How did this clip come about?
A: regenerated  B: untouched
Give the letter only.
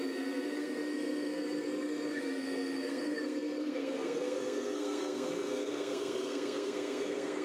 A